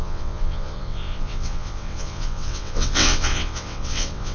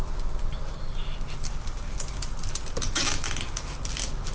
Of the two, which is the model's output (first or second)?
first